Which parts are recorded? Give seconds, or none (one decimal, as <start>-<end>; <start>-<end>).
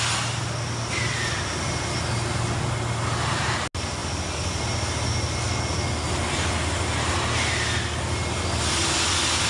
0.0-9.5